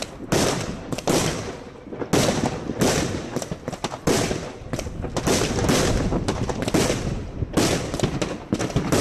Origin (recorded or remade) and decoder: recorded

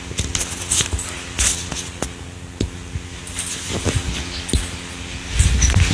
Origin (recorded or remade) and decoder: recorded